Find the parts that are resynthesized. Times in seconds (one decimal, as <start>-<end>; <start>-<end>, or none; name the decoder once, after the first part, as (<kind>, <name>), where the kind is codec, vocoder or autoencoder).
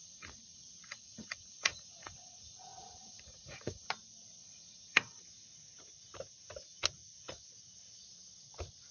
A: 0.0-3.9 (vocoder, Vocos); 4.4-5.2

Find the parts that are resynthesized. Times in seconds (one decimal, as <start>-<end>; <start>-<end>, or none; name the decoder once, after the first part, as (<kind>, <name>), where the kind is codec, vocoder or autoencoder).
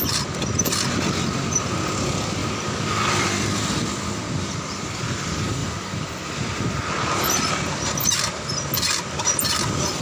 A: none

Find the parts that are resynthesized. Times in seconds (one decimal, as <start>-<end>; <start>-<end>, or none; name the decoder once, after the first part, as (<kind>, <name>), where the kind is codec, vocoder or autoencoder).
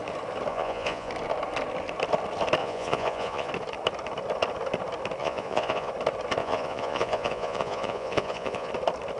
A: 0.5-1.1 (vocoder, Vocos); 2.6-3.5; 5.2-5.9; 6.4-8.7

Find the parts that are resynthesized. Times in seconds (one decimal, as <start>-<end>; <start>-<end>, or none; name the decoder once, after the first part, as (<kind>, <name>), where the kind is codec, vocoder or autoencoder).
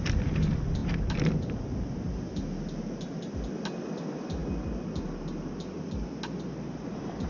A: none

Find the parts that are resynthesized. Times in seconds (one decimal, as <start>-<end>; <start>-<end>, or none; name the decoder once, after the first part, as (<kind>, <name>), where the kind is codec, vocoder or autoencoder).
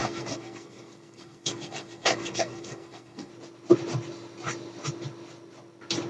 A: 0.0-3.3 (codec, SNAC)